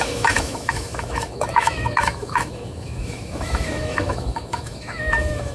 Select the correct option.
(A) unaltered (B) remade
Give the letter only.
B